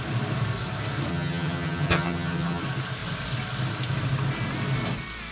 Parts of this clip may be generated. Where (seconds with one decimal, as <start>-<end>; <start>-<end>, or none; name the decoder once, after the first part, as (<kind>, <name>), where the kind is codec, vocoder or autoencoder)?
1.1-2.6 (vocoder, HiFi-GAN)